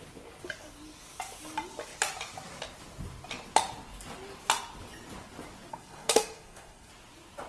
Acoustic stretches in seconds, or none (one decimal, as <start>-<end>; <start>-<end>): 0.0-5.7; 6.9-7.5